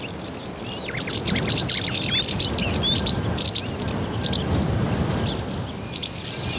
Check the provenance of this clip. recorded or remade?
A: recorded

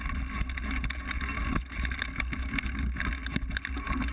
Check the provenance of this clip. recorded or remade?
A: recorded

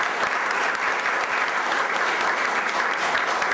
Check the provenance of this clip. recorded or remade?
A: recorded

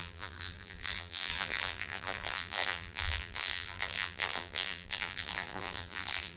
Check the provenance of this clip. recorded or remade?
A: remade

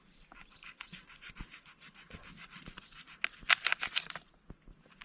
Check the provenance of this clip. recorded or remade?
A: recorded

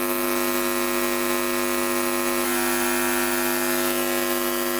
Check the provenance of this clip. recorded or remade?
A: recorded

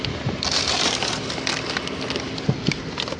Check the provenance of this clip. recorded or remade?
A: remade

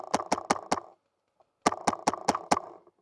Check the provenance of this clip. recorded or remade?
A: recorded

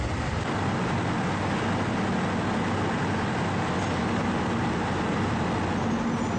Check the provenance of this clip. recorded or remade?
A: recorded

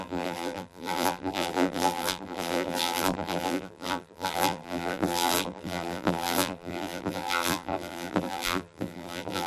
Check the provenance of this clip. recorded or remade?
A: remade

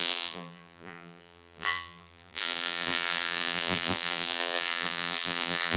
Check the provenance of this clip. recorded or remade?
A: remade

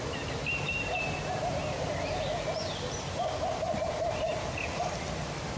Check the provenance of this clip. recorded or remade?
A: remade